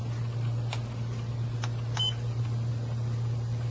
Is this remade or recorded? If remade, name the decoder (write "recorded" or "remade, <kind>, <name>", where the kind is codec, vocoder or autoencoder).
recorded